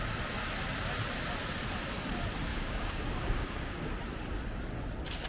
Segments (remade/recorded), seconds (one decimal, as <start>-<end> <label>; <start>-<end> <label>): 0.0-2.5 recorded; 2.5-3.9 remade; 3.9-5.3 recorded